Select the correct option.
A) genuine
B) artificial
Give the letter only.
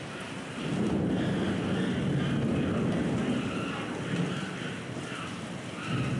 A